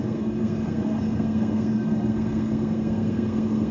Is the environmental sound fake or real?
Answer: fake